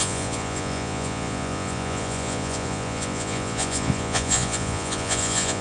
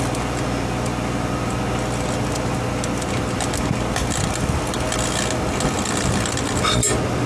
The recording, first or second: second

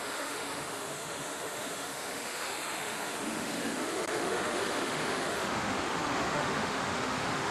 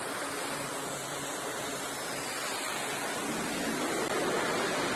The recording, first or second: second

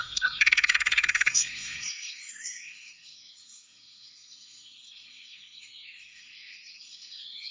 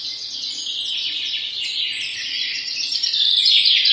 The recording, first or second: second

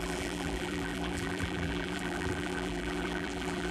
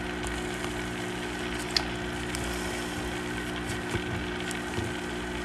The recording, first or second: second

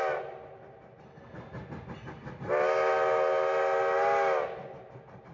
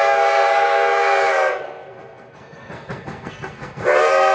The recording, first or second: first